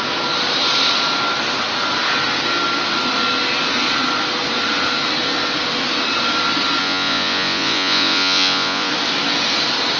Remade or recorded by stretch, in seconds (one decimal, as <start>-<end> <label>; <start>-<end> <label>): 0.0-6.8 recorded; 6.8-8.9 remade; 8.9-10.0 recorded